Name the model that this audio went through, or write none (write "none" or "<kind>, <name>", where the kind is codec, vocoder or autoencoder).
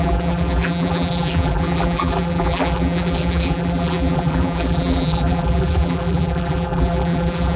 vocoder, BigVGAN v2